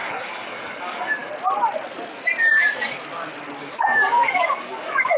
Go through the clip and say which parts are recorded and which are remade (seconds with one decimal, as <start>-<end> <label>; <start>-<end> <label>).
0.0-1.3 remade; 1.3-3.6 recorded; 3.6-5.2 remade